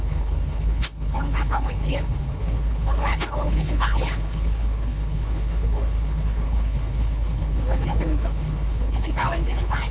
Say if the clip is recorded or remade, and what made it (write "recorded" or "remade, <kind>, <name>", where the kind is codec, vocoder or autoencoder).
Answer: remade, codec, HILCodec